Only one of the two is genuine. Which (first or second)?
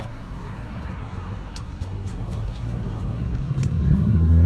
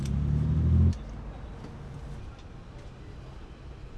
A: second